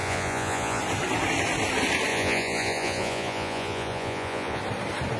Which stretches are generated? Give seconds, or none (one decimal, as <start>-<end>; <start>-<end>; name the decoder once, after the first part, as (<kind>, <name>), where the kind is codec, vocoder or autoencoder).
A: 0.0-0.8 (vocoder, Vocos); 2.1-4.6